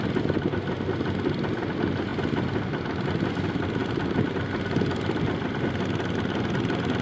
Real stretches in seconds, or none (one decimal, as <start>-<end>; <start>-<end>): 0.0-7.0